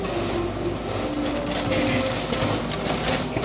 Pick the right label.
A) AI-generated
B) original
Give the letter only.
B